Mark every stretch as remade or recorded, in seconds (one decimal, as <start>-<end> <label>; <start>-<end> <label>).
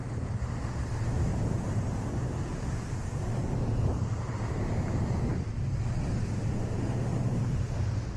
0.0-1.3 recorded; 1.3-4.9 remade; 4.9-7.1 recorded; 7.1-7.7 remade; 7.7-8.2 recorded